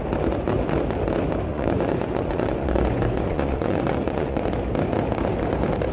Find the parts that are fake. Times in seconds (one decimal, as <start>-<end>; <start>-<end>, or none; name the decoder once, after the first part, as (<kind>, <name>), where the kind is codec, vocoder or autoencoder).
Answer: 1.5-4.4 (vocoder, Vocos)